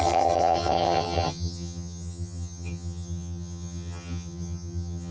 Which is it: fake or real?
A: fake